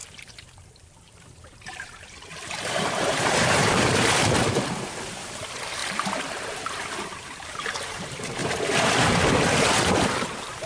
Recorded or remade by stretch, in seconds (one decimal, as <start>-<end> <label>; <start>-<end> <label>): 0.0-8.4 remade; 8.4-9.9 recorded; 9.9-10.7 remade